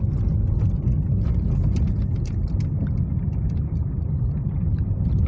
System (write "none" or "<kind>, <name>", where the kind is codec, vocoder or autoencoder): none